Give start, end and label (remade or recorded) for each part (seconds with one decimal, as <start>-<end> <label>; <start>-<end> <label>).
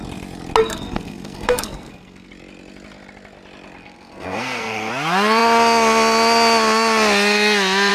0.0-0.6 recorded; 0.6-2.3 remade; 2.3-3.8 recorded; 3.8-4.9 remade; 4.9-7.9 recorded